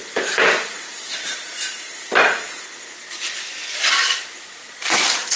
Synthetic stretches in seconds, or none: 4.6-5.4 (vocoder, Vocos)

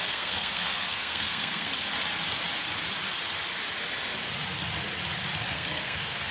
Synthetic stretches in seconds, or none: 0.0-1.7 (codec, SNAC); 5.5-6.3

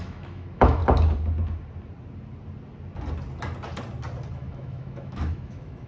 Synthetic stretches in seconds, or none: 0.0-0.8 (autoencoder, DAC-VAE); 4.3-5.9

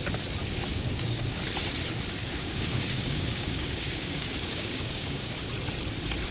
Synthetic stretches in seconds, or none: 0.7-1.4 (codec, DAC); 2.2-5.3